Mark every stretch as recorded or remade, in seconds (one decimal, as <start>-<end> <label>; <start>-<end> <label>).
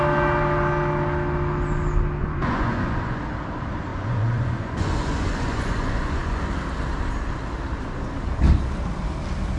0.0-2.2 recorded; 2.2-3.2 remade; 3.2-3.9 recorded; 3.9-6.4 remade; 6.4-9.6 recorded